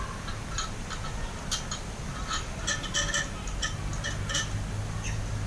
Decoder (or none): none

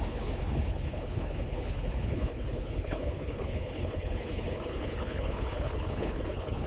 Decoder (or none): codec, HILCodec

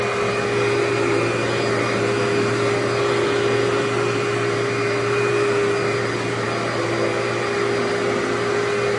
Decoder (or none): none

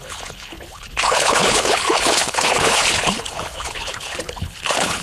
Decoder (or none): codec, HILCodec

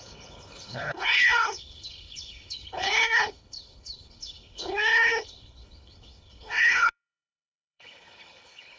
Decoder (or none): codec, HILCodec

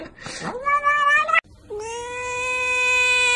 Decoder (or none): none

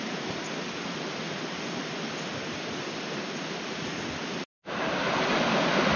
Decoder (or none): none